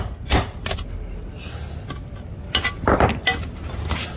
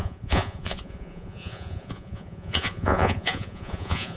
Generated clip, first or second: second